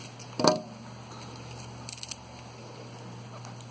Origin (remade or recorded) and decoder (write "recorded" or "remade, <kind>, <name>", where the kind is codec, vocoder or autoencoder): recorded